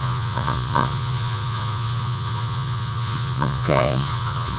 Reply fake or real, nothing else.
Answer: fake